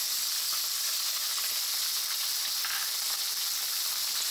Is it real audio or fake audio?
real